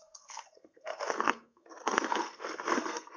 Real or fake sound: fake